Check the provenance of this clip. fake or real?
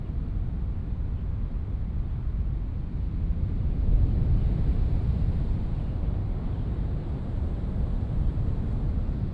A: real